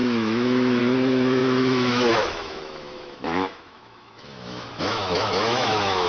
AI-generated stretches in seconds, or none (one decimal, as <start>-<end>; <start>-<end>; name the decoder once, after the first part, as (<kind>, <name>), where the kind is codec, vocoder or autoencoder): 0.0-6.1 (autoencoder, DAC-VAE)